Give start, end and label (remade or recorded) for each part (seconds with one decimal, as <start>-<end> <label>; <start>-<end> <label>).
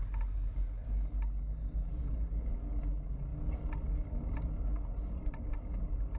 0.0-6.2 recorded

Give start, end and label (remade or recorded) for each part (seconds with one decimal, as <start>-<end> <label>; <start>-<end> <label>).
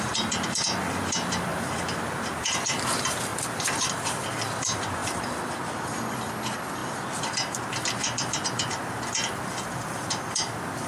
0.0-3.3 remade; 3.3-3.9 recorded; 3.9-10.9 remade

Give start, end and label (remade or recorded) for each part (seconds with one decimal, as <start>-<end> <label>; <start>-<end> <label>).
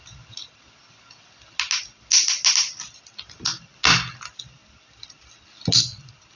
0.0-6.4 recorded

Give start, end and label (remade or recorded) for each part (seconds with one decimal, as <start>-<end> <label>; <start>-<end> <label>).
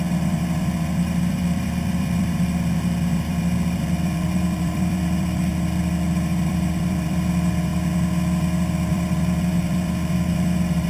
0.0-5.5 remade; 5.5-6.1 recorded; 6.1-7.7 remade; 7.7-8.9 recorded; 8.9-10.9 remade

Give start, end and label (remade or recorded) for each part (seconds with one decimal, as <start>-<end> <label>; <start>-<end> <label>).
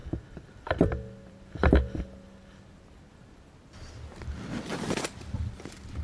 0.0-2.0 remade; 2.0-4.7 recorded; 4.7-5.4 remade; 5.4-6.0 recorded